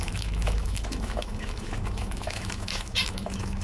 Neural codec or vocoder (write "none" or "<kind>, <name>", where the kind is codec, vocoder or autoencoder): autoencoder, DAC-VAE